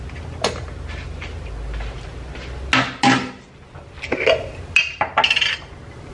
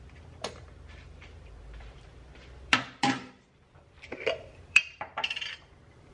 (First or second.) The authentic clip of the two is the first